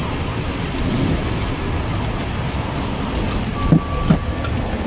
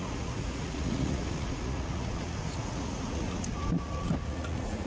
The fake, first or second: second